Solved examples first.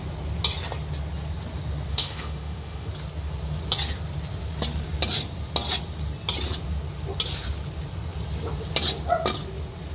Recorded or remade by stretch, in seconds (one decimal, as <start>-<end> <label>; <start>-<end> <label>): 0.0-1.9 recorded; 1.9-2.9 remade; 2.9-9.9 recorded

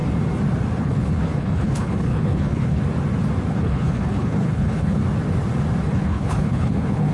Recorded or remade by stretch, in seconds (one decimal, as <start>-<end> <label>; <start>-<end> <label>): 0.0-0.8 recorded; 0.8-2.8 remade; 2.8-3.5 recorded; 3.5-5.0 remade; 5.0-5.8 recorded; 5.8-7.1 remade

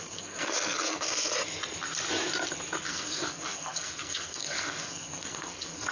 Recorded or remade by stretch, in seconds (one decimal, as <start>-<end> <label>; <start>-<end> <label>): 0.0-1.3 remade; 1.3-2.8 recorded; 2.8-5.9 remade

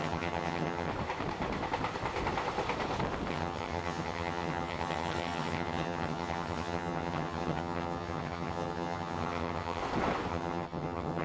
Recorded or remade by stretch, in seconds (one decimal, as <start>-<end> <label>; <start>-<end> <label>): 0.0-0.9 remade; 0.9-3.3 recorded; 3.3-9.8 remade; 9.8-10.3 recorded; 10.3-11.2 remade

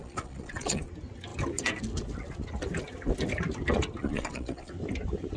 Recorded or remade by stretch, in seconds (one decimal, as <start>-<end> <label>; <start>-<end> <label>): 0.0-0.8 remade; 0.8-4.0 recorded; 4.0-4.7 remade; 4.7-5.4 recorded

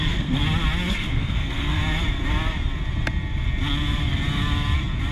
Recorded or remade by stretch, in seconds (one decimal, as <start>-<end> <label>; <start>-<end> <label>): 0.0-0.4 remade; 0.4-0.9 recorded; 0.9-1.8 remade; 1.8-5.1 recorded

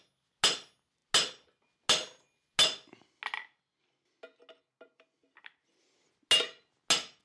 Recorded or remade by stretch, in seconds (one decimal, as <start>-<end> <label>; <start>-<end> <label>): 0.0-7.2 recorded

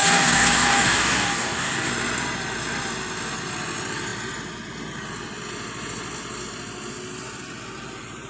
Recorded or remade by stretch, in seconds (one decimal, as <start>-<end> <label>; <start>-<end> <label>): 0.0-1.9 remade; 1.9-8.3 recorded